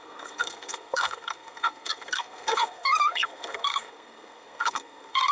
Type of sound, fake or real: fake